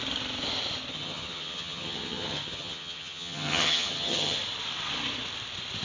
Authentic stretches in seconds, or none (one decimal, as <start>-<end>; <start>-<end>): 0.0-0.9; 4.4-5.8